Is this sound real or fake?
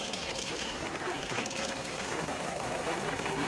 fake